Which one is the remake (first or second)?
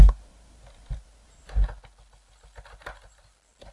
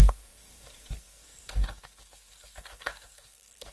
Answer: second